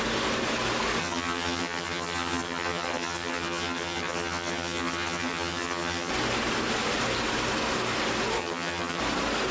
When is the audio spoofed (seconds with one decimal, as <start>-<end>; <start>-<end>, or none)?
1.0-6.1; 8.4-9.0